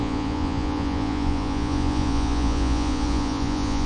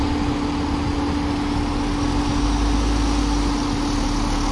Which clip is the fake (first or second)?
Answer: first